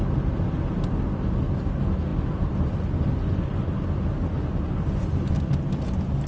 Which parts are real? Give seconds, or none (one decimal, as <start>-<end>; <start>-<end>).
0.0-6.3